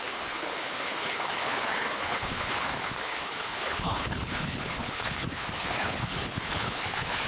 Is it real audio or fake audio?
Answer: fake